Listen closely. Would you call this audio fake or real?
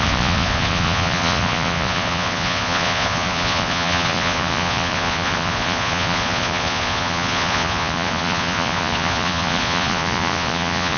fake